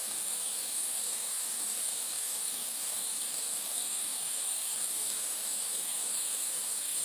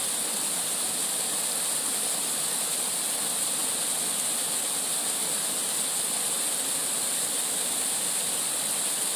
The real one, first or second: second